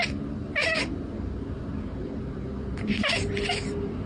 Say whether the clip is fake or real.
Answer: real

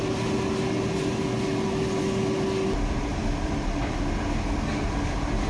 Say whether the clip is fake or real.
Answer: real